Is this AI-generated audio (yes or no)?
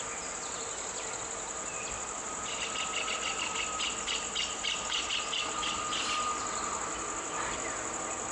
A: no